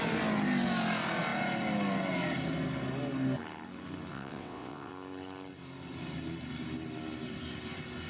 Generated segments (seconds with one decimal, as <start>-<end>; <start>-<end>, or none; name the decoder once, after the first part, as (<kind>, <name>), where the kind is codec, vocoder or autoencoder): 4.1-4.9 (vocoder, WaveNeXt)

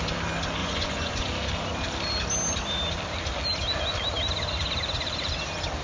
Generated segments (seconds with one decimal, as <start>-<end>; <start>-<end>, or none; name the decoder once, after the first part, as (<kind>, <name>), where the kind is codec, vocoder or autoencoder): 0.6-1.3 (vocoder, Vocos)

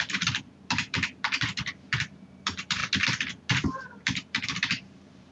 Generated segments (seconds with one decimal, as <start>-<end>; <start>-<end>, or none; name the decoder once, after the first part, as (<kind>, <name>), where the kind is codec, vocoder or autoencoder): 0.0-2.8 (vocoder, BigVGAN v2); 3.5-5.3

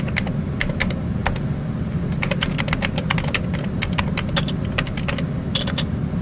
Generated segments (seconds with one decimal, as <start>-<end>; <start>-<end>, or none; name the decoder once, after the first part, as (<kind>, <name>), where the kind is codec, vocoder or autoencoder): none